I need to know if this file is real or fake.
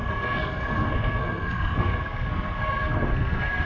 fake